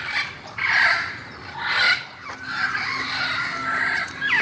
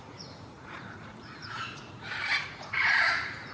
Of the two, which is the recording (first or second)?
first